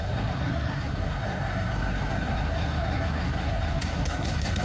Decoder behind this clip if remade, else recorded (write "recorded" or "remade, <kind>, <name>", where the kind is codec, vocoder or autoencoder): remade, codec, SNAC